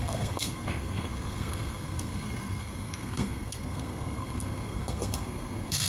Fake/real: fake